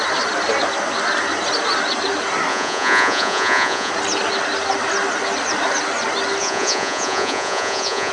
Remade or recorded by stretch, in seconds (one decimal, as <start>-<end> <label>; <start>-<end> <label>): 0.0-2.5 recorded; 2.5-3.9 remade; 3.9-6.4 recorded; 6.4-8.1 remade